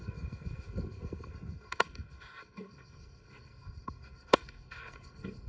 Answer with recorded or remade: remade